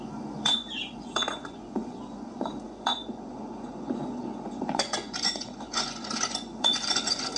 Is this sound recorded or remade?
remade